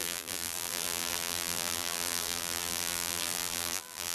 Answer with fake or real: fake